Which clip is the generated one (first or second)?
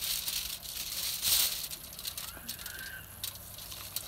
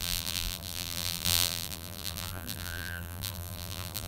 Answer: second